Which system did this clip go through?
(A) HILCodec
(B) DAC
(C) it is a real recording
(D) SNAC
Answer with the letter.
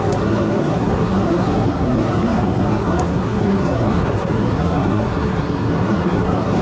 D